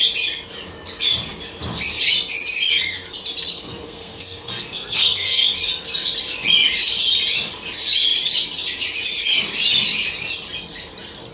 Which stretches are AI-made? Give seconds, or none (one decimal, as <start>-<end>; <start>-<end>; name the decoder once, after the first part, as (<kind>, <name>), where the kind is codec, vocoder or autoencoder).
3.5-5.5 (codec, SNAC)